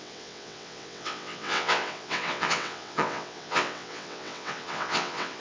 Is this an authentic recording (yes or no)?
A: no